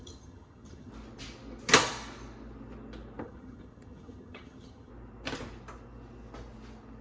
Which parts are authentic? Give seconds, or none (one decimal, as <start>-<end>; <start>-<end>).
0.9-3.2; 4.9-7.0